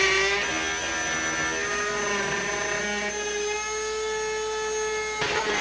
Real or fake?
real